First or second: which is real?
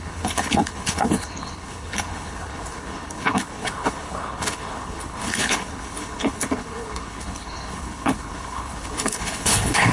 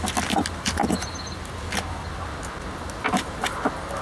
second